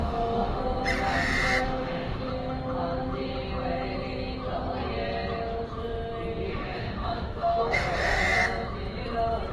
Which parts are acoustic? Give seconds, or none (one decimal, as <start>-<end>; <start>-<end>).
0.6-1.6; 2.3-6.5; 8.2-9.5